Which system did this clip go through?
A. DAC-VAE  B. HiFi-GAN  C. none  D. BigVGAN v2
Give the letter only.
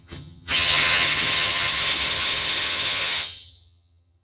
B